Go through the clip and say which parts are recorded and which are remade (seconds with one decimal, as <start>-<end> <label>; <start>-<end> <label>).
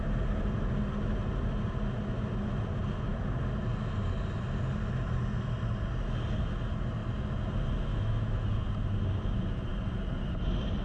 0.0-7.9 recorded; 7.9-8.6 remade; 8.6-10.8 recorded